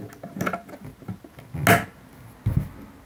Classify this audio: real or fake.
real